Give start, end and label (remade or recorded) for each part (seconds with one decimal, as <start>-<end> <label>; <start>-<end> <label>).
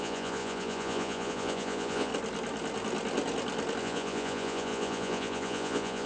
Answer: 0.0-2.1 remade; 2.1-3.8 recorded; 3.8-6.1 remade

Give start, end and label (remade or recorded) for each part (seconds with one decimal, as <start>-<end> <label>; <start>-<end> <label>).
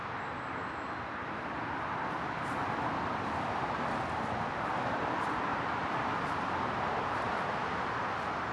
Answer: 0.0-5.5 recorded; 5.5-7.9 remade; 7.9-8.5 recorded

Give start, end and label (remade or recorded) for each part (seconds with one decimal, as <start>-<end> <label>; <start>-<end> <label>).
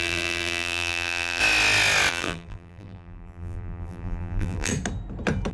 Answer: 0.0-1.4 remade; 1.4-2.1 recorded; 2.1-4.7 remade; 4.7-5.5 recorded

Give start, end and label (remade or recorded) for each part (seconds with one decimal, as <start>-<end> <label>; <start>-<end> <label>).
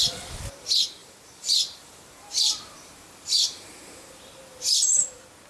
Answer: 0.0-1.0 recorded; 1.0-4.3 remade; 4.3-5.5 recorded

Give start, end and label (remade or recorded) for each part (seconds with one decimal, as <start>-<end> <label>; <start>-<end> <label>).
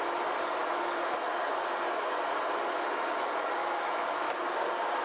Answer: 0.0-3.6 recorded; 3.6-4.4 remade; 4.4-5.0 recorded